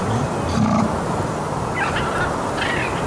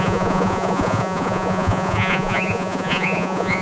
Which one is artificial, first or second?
second